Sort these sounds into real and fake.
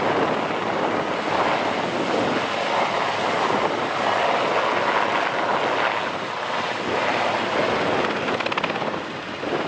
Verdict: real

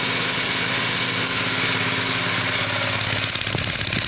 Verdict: real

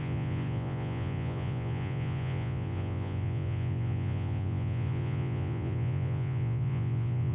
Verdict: fake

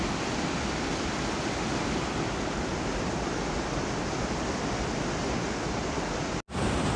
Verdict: real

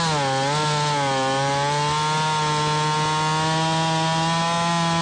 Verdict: real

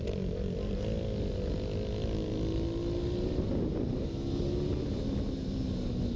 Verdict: real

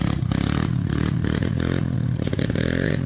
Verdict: fake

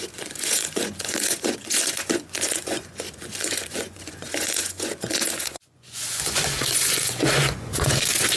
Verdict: fake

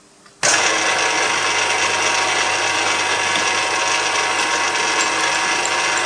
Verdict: real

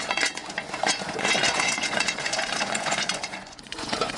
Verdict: fake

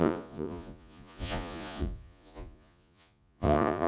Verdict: fake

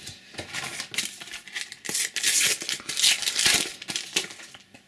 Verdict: real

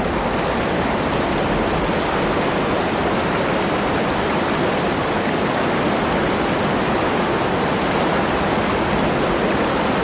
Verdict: real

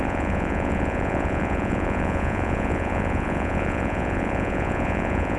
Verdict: fake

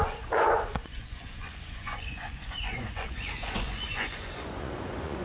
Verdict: fake